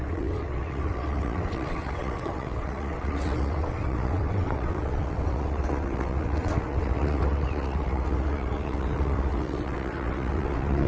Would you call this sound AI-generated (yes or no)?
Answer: yes